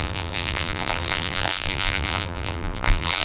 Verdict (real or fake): fake